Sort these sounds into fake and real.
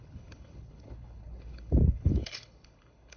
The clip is fake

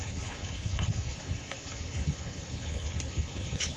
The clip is fake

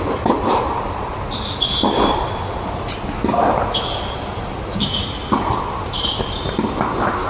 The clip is real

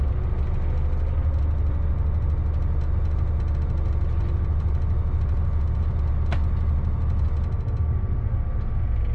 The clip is real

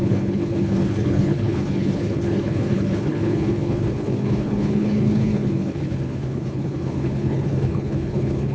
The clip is fake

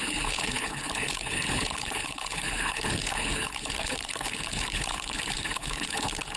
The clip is fake